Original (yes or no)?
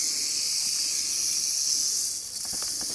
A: yes